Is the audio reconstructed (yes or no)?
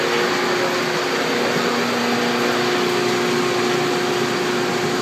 no